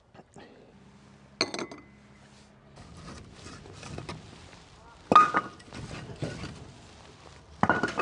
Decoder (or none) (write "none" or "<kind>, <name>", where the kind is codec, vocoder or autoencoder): none